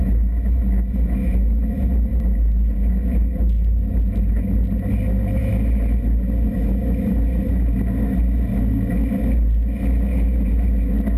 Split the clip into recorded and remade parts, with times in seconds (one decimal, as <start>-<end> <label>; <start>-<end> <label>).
0.0-11.2 recorded